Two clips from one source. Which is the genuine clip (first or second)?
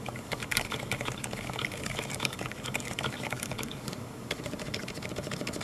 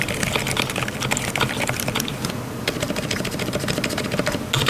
second